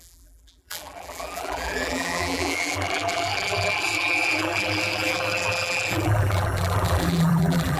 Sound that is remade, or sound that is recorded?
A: remade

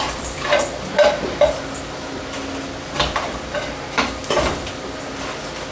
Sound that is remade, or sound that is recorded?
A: recorded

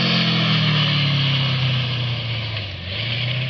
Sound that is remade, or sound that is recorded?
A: recorded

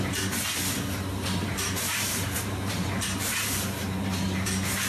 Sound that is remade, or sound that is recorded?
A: remade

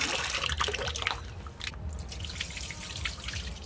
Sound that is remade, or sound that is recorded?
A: recorded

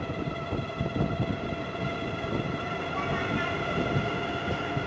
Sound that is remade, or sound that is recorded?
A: recorded